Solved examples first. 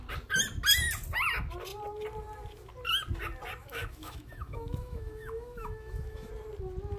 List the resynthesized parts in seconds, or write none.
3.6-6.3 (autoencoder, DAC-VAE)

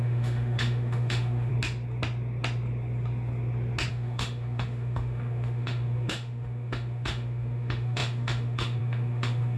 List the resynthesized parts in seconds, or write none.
0.0-1.5 (autoencoder, DAC-VAE); 3.9-9.6

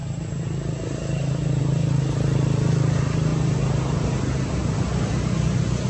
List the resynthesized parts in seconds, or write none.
none